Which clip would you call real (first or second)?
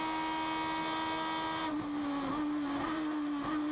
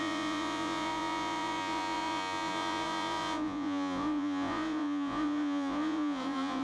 first